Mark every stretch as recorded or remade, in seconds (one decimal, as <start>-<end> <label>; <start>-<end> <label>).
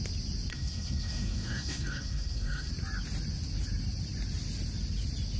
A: 0.0-0.5 recorded; 0.5-2.7 remade; 2.7-5.4 recorded